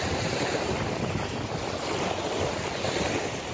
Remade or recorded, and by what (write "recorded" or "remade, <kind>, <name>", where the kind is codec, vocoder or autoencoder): recorded